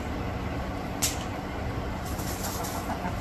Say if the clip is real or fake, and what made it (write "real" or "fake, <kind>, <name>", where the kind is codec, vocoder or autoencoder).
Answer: real